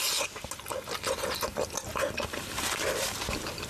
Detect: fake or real real